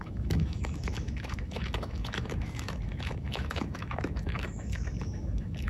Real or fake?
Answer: fake